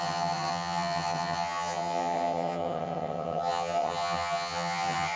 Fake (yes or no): yes